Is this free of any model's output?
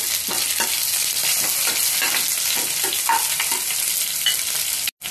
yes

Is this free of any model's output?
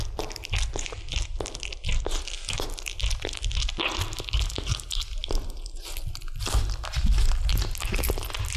yes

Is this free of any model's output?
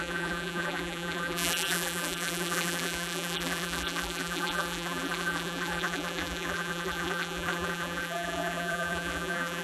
no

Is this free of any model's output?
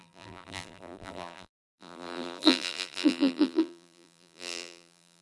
no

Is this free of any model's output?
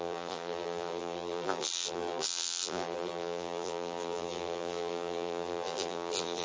no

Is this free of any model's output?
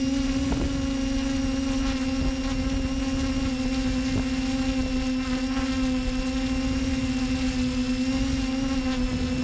yes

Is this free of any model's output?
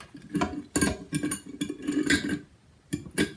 yes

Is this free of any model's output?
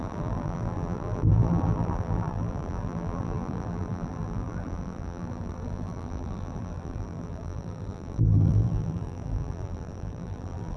no